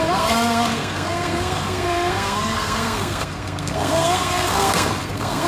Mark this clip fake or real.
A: fake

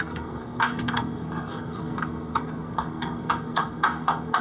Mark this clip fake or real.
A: fake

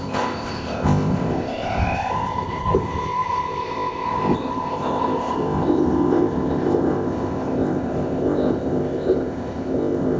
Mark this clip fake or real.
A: fake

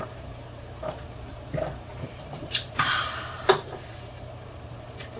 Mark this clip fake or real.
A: fake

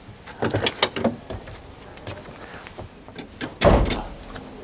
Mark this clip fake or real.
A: real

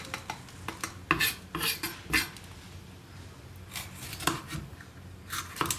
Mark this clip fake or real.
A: real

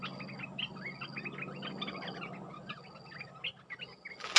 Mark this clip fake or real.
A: real